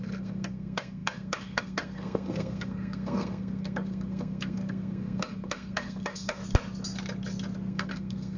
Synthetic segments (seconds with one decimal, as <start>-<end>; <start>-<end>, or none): 0.0-6.4; 7.7-8.4